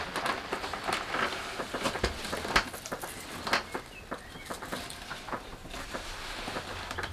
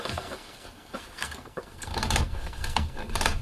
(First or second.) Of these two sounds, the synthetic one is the second